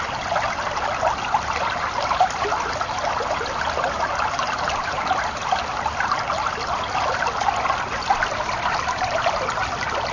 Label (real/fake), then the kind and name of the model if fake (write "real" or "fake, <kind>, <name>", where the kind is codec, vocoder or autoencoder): real